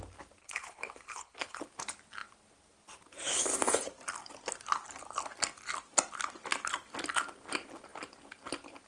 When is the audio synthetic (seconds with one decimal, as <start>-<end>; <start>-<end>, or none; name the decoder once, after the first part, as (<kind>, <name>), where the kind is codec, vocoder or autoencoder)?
0.4-1.6 (codec, HILCodec)